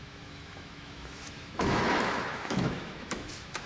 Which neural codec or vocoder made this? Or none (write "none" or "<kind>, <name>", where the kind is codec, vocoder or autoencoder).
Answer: autoencoder, DAC-VAE